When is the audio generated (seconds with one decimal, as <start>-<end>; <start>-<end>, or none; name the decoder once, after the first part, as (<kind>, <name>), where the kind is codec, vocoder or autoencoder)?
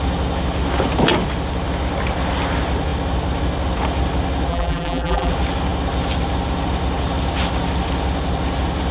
4.5-5.3 (vocoder, BigVGAN v2)